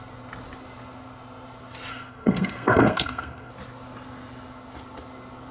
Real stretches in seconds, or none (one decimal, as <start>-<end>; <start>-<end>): 0.0-1.9; 3.5-5.5